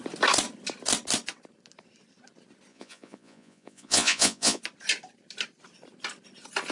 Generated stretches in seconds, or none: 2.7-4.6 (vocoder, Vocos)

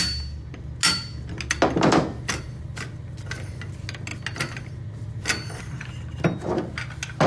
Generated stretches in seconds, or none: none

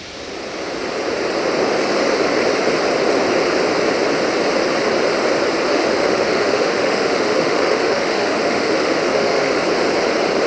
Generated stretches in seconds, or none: 5.7-9.5 (autoencoder, DAC-VAE)

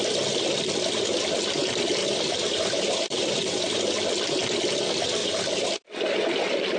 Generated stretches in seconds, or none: 2.0-3.8 (vocoder, BigVGAN v2); 5.2-5.7